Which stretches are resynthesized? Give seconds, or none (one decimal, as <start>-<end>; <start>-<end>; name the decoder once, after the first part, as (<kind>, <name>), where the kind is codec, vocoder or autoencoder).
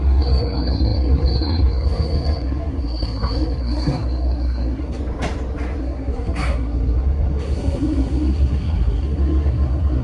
0.0-5.0 (codec, SNAC); 5.8-10.0